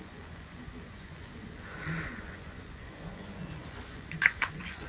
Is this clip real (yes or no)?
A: no